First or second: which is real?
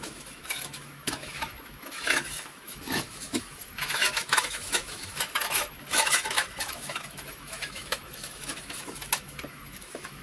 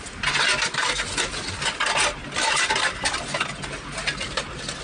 second